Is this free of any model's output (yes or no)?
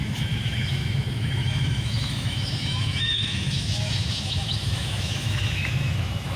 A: no